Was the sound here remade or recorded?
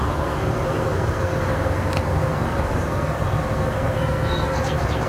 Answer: remade